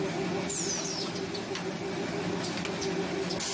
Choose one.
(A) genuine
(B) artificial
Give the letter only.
A